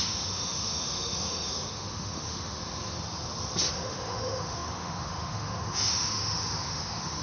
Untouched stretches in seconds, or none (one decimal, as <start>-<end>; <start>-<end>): 2.6-3.7